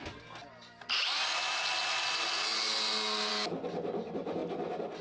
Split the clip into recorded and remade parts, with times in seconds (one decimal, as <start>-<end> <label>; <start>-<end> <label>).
0.0-5.0 recorded